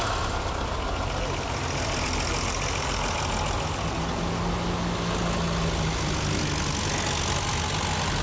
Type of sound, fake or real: real